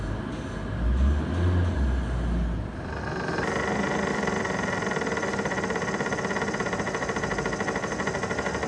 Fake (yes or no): no